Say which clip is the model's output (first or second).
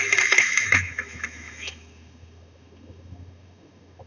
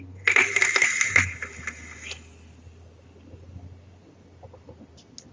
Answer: first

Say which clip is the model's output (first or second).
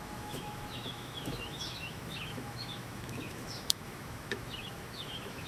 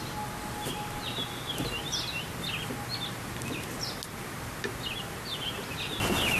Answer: first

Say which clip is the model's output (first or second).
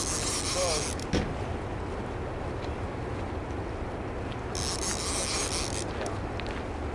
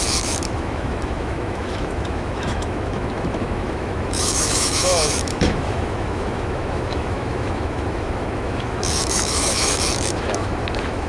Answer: second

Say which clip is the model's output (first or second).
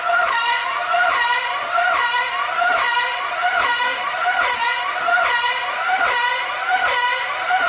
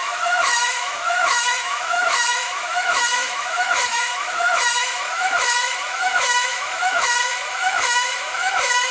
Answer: second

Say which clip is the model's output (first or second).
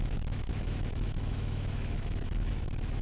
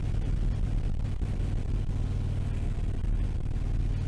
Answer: first